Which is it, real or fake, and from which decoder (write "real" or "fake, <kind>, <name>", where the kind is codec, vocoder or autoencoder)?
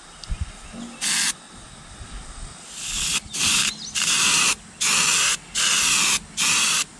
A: real